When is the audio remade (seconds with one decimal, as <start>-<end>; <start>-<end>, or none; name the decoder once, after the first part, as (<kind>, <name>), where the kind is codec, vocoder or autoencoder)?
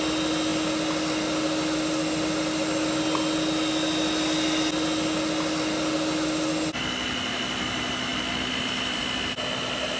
none